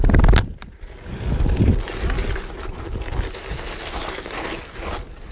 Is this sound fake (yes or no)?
no